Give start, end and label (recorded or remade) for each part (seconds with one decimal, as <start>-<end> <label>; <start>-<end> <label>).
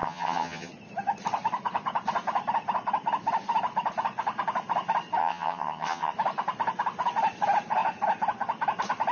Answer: 0.0-0.7 remade; 0.7-5.2 recorded; 5.2-6.1 remade; 6.1-9.1 recorded